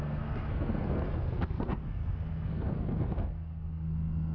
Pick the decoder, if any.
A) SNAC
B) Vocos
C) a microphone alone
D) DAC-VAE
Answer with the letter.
A